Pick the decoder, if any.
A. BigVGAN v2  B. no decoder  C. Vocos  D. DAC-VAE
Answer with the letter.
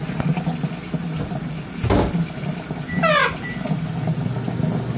B